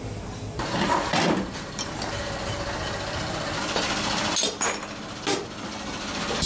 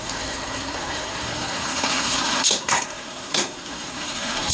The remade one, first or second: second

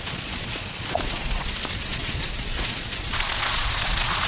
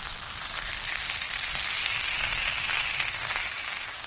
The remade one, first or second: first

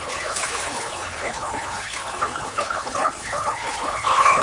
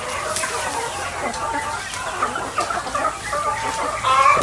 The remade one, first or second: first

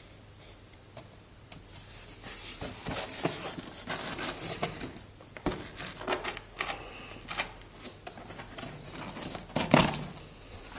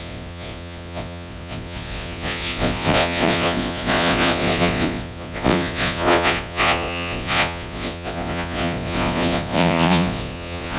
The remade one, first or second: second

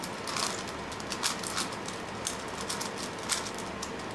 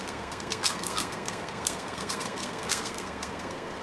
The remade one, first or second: second